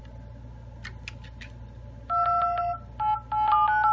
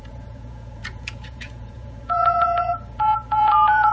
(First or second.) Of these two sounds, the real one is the first